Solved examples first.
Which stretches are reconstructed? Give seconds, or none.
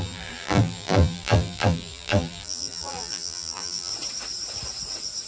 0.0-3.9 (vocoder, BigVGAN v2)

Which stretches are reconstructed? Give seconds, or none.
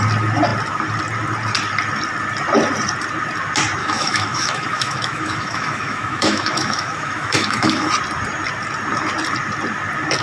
3.8-7.9 (autoencoder, DAC-VAE)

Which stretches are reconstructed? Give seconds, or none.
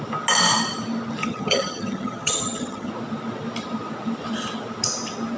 1.2-2.9 (vocoder, HiFi-GAN)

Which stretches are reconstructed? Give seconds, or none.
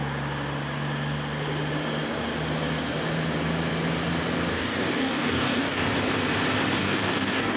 4.5-5.9 (codec, DAC); 6.8-7.6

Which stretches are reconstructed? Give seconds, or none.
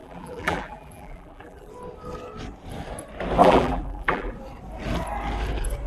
0.0-1.7 (vocoder, BigVGAN v2); 3.4-4.3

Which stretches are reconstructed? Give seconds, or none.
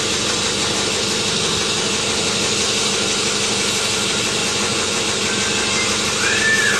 4.4-5.0 (vocoder, Vocos)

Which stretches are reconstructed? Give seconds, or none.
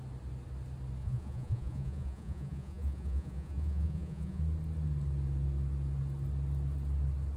1.0-4.4 (vocoder, Vocos)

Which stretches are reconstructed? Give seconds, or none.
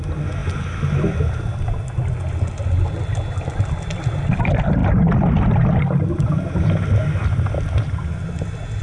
none